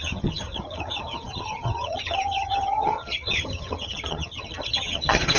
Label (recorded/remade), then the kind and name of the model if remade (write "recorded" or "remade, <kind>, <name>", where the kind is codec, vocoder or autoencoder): remade, vocoder, HiFi-GAN